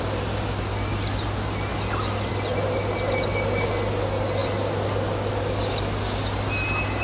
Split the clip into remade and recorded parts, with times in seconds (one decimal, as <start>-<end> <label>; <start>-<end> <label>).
0.0-7.0 recorded